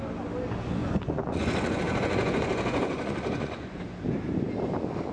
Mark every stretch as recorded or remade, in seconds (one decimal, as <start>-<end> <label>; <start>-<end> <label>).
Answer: 0.0-0.8 recorded; 0.8-3.8 remade; 3.8-5.1 recorded